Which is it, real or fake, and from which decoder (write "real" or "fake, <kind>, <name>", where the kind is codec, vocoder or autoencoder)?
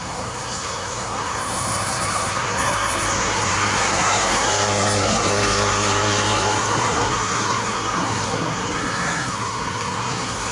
fake, codec, SNAC